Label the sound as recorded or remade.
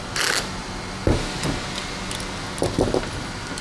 recorded